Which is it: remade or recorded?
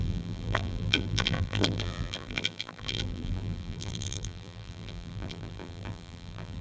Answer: remade